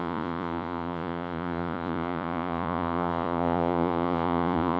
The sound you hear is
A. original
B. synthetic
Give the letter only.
B